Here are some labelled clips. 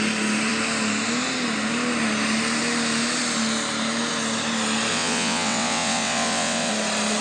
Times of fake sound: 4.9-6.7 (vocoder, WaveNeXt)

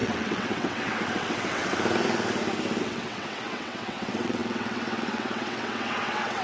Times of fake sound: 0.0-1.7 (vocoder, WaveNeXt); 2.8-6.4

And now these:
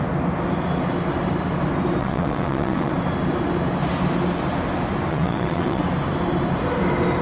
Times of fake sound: 2.0-2.9 (vocoder, WaveNeXt); 5.1-5.8

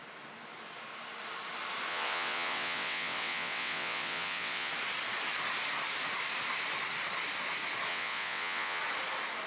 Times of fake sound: 1.9-4.7 (vocoder, WaveNeXt); 7.9-8.8

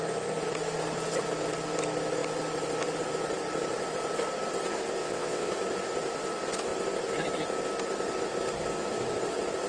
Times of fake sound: 5.0-5.5 (vocoder, WaveNeXt)